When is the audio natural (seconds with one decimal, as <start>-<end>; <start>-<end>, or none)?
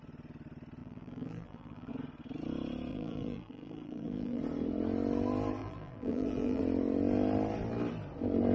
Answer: 0.0-0.8; 1.9-2.9; 4.4-5.6; 6.6-8.5